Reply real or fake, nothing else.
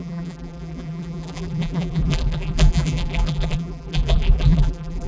fake